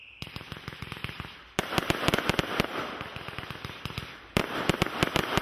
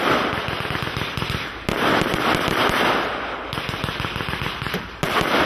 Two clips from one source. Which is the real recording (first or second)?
second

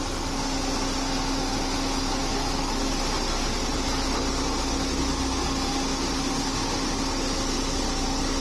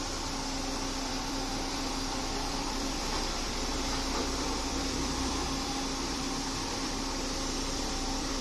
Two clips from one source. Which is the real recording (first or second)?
first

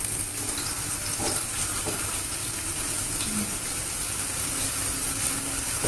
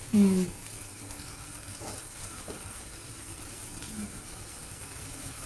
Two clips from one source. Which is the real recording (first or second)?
first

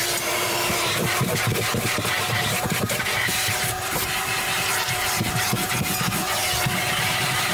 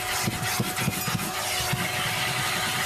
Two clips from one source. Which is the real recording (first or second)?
second